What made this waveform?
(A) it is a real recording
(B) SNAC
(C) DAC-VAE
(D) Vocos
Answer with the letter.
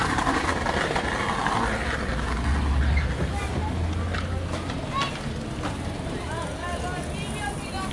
A